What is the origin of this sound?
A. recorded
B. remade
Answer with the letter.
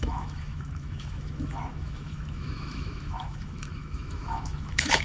B